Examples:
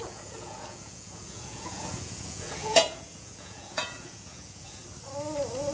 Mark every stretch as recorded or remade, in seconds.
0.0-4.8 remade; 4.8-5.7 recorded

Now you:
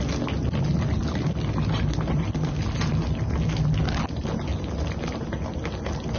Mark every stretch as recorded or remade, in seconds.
0.0-6.2 recorded

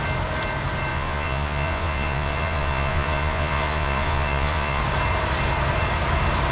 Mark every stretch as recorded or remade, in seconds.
0.0-0.9 recorded; 0.9-4.8 remade; 4.8-6.5 recorded

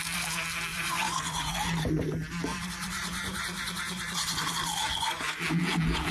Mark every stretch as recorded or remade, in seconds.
0.0-0.7 recorded; 0.7-1.5 remade; 1.5-2.5 recorded; 2.5-4.5 remade; 4.5-4.9 recorded; 4.9-5.4 remade; 5.4-6.1 recorded

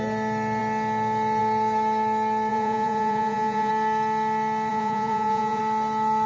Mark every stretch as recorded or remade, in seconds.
0.0-2.5 recorded; 2.5-3.7 remade; 3.7-4.7 recorded; 4.7-5.6 remade; 5.6-6.3 recorded